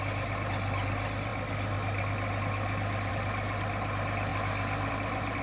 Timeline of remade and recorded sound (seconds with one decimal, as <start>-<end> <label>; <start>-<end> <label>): 0.0-5.4 recorded